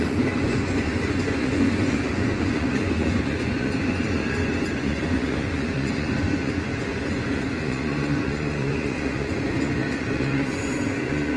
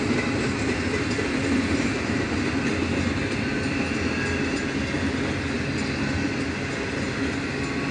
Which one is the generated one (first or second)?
first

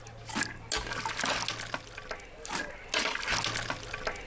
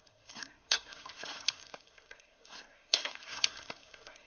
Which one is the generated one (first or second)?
second